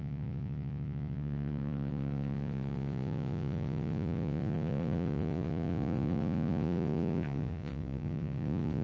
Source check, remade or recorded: remade